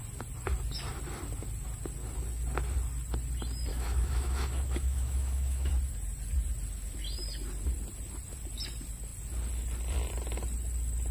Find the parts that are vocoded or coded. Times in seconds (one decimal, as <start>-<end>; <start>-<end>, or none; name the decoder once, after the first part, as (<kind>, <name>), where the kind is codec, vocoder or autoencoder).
3.7-5.7 (autoencoder, DAC-VAE)